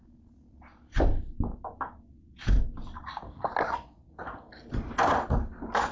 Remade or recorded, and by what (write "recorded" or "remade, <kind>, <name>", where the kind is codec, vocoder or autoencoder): recorded